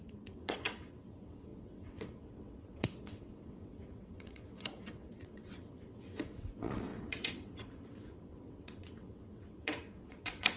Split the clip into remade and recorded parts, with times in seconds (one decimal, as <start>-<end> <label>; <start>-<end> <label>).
0.0-10.6 remade